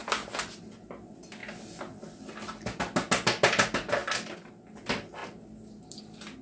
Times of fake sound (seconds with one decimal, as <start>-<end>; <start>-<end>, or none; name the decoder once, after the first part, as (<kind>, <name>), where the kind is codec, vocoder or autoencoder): none